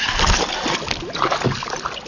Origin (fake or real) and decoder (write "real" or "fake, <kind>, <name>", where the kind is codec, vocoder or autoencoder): real